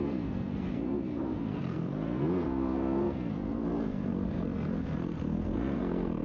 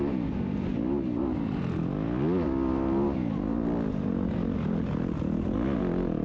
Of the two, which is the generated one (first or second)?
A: first